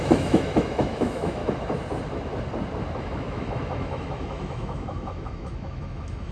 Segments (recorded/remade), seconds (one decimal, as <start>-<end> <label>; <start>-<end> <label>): 0.0-1.4 remade; 1.4-3.0 recorded; 3.0-6.3 remade